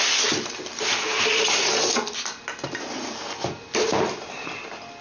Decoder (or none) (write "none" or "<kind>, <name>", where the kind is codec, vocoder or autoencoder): none